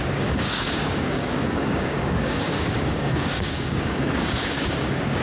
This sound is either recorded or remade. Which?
remade